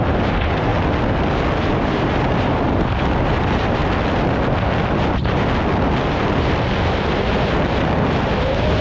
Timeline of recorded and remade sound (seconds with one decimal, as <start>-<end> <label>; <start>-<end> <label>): 0.0-0.7 remade; 0.7-1.7 recorded; 1.7-3.8 remade; 3.8-8.1 recorded; 8.1-8.8 remade